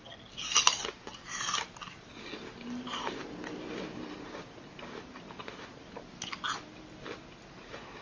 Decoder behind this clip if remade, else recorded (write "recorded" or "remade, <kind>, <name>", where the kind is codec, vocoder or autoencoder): recorded